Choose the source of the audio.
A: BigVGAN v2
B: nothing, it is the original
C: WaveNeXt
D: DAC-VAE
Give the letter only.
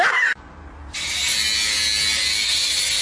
B